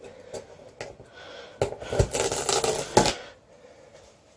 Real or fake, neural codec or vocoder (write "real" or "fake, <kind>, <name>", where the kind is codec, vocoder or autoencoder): real